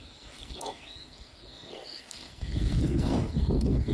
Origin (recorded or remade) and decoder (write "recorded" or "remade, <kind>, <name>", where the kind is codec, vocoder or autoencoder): remade, codec, SNAC